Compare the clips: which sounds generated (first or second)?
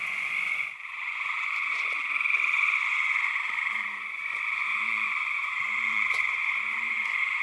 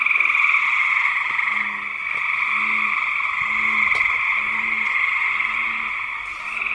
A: first